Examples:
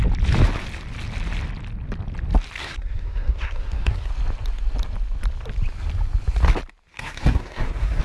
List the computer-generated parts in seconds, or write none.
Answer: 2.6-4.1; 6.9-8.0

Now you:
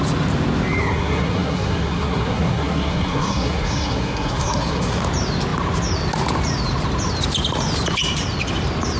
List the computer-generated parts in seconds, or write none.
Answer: 0.8-5.0